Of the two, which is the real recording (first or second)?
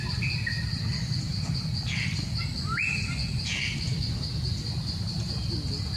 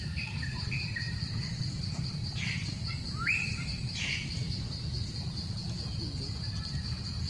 first